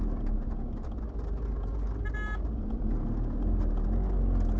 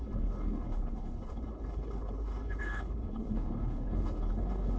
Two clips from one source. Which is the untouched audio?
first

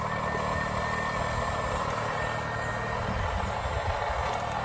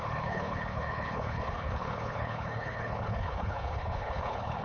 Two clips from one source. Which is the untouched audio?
first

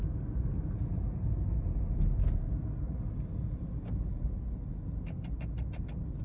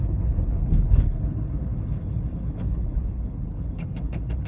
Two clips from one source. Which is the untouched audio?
first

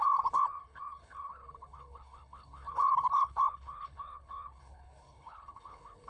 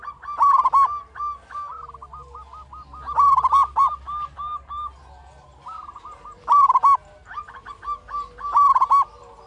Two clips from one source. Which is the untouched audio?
second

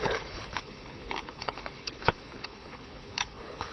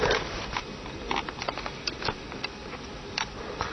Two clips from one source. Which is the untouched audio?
second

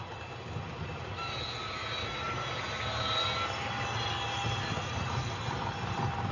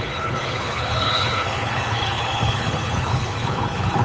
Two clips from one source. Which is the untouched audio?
first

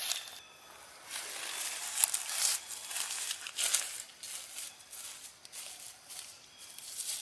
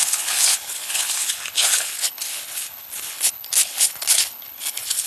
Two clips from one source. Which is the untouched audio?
first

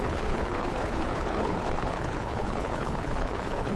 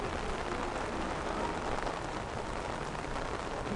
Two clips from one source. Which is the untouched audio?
second